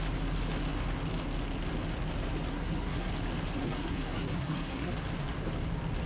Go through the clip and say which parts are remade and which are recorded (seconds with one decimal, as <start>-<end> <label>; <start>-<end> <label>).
0.0-2.5 recorded; 2.5-3.1 remade; 3.1-3.6 recorded; 3.6-4.9 remade; 4.9-6.1 recorded